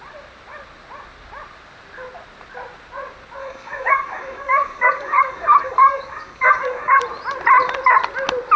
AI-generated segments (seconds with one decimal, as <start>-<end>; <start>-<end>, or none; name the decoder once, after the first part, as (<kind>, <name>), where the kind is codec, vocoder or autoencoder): 3.4-7.0 (codec, DAC)